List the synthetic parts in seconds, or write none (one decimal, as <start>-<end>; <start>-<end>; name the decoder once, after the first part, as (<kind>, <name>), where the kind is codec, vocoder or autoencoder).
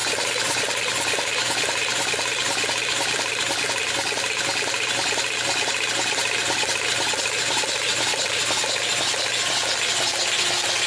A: none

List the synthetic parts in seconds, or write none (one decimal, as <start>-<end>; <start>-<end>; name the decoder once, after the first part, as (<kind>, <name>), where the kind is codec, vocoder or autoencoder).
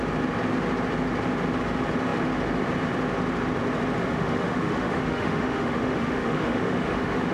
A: 4.0-7.3 (autoencoder, DAC-VAE)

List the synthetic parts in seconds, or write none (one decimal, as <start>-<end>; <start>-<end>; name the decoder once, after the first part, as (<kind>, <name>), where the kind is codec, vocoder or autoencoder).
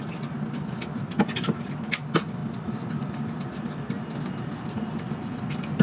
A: none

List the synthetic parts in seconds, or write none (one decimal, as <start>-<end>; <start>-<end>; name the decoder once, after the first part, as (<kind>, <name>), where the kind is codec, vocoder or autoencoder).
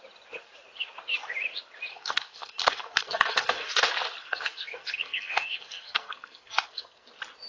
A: 1.9-3.8 (codec, SNAC); 4.2-7.1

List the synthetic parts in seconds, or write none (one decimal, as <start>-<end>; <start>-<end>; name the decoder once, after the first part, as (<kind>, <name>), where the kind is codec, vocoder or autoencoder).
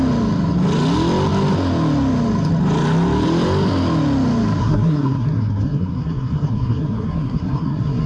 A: 4.6-8.1 (codec, SNAC)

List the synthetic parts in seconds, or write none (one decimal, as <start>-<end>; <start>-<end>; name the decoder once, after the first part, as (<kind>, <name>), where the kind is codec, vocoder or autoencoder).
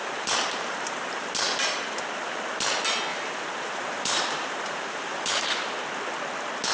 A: 0.0-1.3 (vocoder, BigVGAN v2); 3.1-5.4